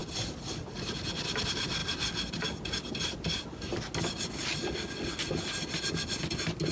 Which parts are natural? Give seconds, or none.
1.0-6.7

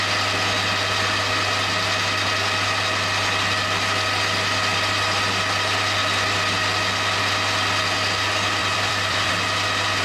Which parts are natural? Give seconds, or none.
0.0-8.6; 9.3-10.0

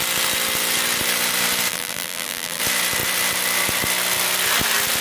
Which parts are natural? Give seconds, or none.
0.0-1.7; 2.6-5.0

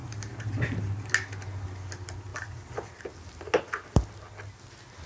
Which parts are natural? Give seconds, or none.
1.1-5.1